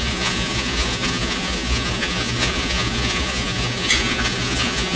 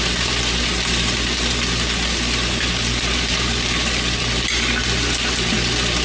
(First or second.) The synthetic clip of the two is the first